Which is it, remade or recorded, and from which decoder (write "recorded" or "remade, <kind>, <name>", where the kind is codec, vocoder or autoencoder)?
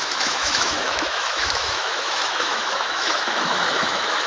remade, autoencoder, DAC-VAE